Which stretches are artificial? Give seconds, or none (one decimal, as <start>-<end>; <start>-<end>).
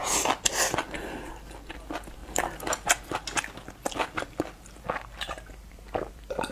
1.7-2.2; 4.8-6.5